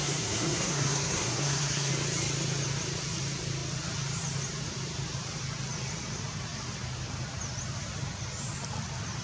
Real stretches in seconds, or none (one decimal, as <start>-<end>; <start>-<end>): 1.9-9.2